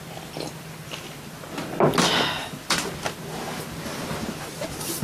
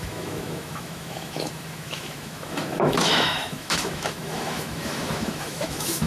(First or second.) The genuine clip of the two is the first